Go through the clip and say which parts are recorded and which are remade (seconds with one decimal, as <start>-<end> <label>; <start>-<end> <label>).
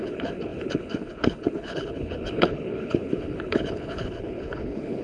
0.0-5.0 remade